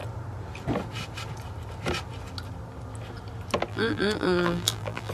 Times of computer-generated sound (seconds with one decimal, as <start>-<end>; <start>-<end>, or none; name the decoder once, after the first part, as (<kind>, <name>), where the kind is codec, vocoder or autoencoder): 3.7-5.1 (vocoder, BigVGAN v2)